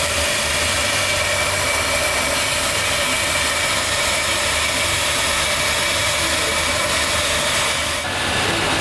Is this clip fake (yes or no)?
no